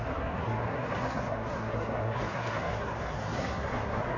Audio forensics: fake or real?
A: fake